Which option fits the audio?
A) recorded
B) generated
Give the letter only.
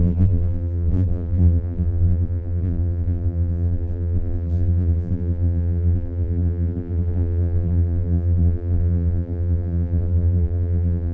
B